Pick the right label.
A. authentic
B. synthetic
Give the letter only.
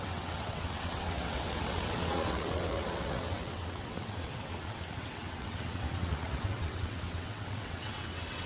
B